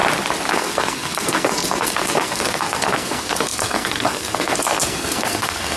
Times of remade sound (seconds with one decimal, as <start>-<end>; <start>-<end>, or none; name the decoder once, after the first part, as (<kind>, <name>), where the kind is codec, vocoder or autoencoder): 0.5-5.8 (codec, SNAC)